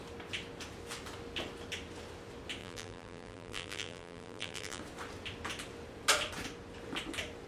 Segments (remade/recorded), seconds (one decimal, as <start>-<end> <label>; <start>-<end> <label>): 0.0-2.6 recorded; 2.6-4.8 remade; 4.8-7.5 recorded